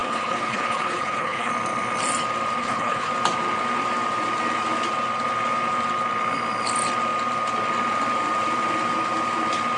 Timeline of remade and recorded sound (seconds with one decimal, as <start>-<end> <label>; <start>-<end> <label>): 0.0-1.5 remade; 1.5-2.6 recorded; 2.6-3.1 remade; 3.1-9.8 recorded